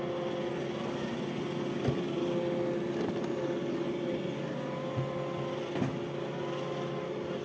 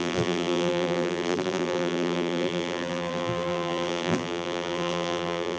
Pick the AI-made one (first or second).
second